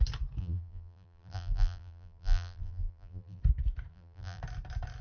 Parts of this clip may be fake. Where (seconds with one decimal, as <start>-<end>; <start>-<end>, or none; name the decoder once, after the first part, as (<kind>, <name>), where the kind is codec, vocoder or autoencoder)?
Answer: 0.4-3.4 (vocoder, BigVGAN v2); 3.9-4.4